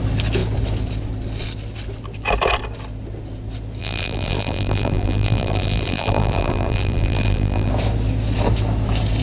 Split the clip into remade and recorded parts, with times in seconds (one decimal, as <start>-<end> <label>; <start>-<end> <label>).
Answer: 0.0-3.8 recorded; 3.8-7.7 remade; 7.7-9.2 recorded

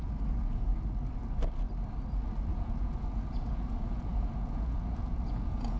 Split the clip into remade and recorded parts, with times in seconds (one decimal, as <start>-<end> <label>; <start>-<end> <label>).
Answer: 0.0-0.7 remade; 0.7-2.5 recorded; 2.5-5.8 remade

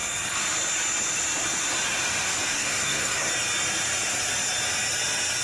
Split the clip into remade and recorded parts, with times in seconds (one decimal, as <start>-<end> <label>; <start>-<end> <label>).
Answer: 0.0-2.5 recorded; 2.5-3.3 remade; 3.3-5.4 recorded

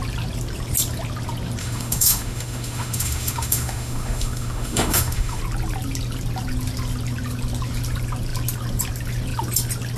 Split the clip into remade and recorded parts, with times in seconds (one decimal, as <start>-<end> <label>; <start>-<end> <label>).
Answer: 0.0-1.6 recorded; 1.6-5.4 remade; 5.4-10.0 recorded

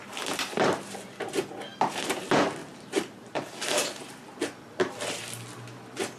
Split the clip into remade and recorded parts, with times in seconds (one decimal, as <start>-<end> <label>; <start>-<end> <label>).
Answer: 0.0-2.6 recorded; 2.6-4.4 remade; 4.4-6.2 recorded

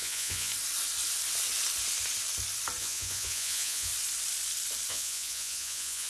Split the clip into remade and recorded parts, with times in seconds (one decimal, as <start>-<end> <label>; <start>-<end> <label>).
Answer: 0.0-0.5 remade; 0.5-2.8 recorded; 2.8-3.9 remade; 3.9-4.9 recorded; 4.9-6.1 remade

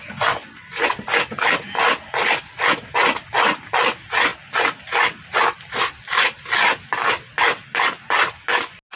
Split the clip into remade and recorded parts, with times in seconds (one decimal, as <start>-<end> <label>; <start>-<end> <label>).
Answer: 0.0-9.0 recorded